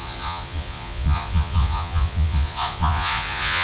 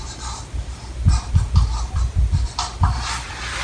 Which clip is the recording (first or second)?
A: second